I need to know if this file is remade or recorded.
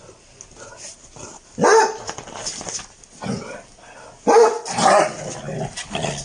recorded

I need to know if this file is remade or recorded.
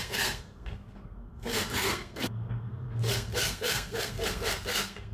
remade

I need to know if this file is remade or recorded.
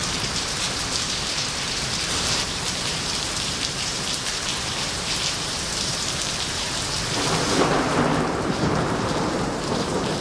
remade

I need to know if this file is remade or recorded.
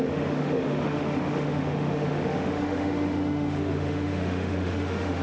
remade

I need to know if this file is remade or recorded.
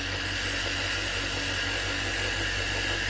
recorded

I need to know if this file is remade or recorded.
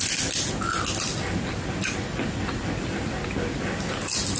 recorded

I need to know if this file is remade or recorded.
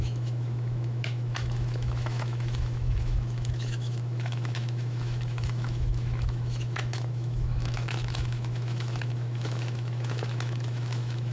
remade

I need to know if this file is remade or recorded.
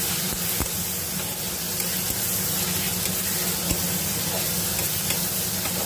recorded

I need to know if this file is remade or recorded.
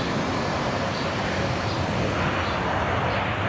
recorded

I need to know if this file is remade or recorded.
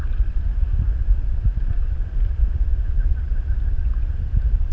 recorded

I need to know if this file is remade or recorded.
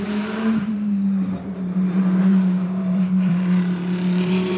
remade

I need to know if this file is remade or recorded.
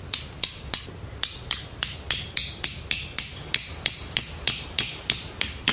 recorded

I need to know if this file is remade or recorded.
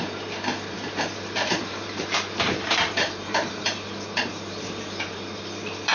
remade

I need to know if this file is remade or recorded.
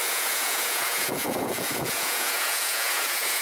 remade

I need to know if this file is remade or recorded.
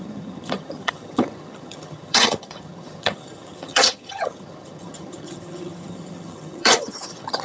remade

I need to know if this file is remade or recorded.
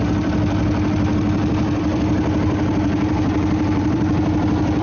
remade